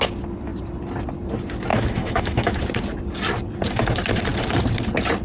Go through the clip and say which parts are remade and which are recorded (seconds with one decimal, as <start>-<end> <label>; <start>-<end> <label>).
0.0-1.7 recorded; 1.7-2.5 remade; 2.5-5.2 recorded